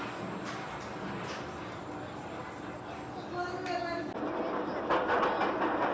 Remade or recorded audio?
recorded